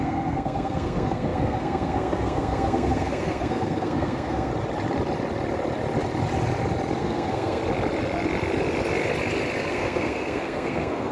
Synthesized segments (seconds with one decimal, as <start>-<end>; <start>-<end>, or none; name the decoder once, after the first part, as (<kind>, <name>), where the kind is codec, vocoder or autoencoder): 0.0-4.5 (codec, SNAC); 7.0-7.6; 9.7-11.1